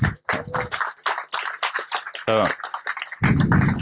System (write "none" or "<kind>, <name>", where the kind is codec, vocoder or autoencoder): none